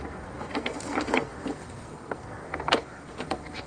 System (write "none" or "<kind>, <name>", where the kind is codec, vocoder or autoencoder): codec, SNAC